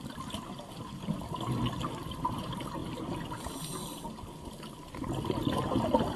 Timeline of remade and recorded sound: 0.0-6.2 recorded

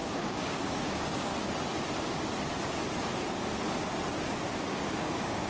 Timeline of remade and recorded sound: 0.0-1.3 remade; 1.3-4.6 recorded; 4.6-5.5 remade

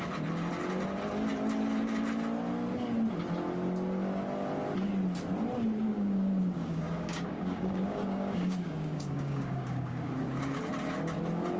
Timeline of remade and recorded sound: 0.0-5.9 recorded; 5.9-10.6 remade; 10.6-11.6 recorded

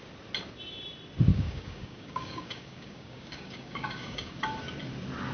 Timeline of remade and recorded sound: 0.0-1.3 recorded; 1.3-4.4 remade; 4.4-5.3 recorded

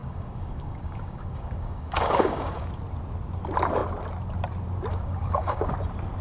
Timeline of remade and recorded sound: 0.0-2.7 remade; 2.7-4.9 recorded; 4.9-5.7 remade; 5.7-6.2 recorded

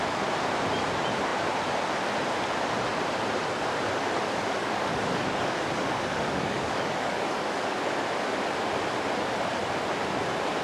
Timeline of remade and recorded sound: 0.0-4.6 recorded; 4.6-7.8 remade; 7.8-10.6 recorded

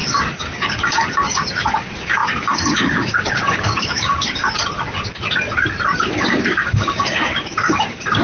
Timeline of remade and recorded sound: 0.0-4.6 remade; 4.6-6.0 recorded; 6.0-8.2 remade

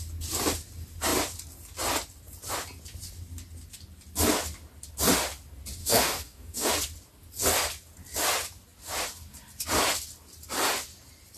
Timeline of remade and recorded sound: 0.0-5.8 recorded; 5.8-6.7 remade; 6.7-11.4 recorded